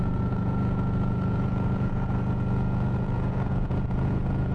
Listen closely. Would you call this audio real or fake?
fake